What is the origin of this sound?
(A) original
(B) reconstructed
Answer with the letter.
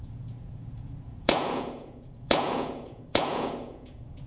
B